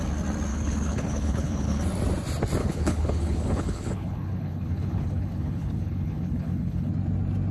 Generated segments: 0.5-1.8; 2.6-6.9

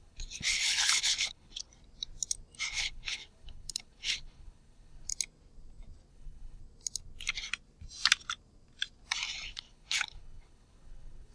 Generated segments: 0.0-1.7; 2.7-5.1; 6.1-6.6; 9.5-11.3

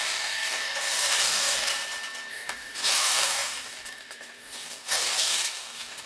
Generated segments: 0.0-1.7; 2.3-6.1

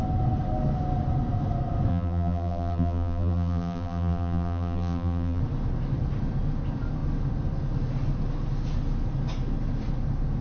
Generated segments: 1.9-5.4